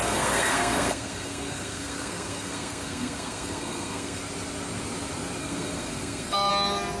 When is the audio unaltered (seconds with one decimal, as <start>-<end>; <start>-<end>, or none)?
4.2-5.4; 6.5-7.0